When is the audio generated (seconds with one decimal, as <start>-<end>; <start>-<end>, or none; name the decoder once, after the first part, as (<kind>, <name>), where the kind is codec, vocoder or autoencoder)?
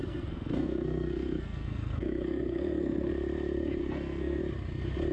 0.0-3.1 (codec, SNAC); 3.8-4.4